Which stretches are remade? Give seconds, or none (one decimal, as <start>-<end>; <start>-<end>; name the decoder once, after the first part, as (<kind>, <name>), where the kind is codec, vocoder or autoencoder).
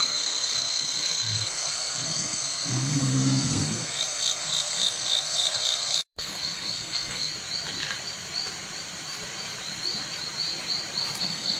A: 0.0-7.3 (codec, SNAC); 11.2-11.6